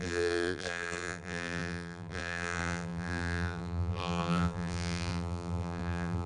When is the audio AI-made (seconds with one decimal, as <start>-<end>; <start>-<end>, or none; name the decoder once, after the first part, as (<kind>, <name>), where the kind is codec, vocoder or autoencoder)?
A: 0.0-6.3 (vocoder, BigVGAN v2)